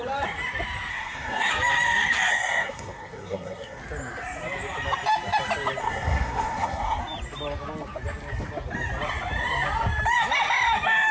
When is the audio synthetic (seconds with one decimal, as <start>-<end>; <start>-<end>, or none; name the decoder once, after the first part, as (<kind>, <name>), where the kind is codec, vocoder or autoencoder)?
0.9-1.5 (codec, SNAC); 2.3-3.8; 5.8-7.0